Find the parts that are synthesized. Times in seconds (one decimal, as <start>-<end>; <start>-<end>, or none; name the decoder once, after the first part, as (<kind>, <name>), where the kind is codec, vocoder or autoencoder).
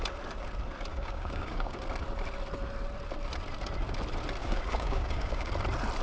0.9-1.8 (codec, DAC); 4.4-5.5